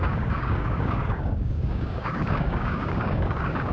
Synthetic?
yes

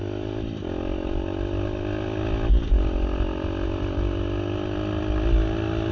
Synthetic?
no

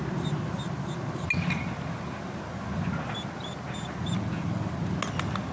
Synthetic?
no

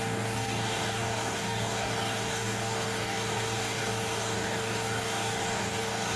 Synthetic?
yes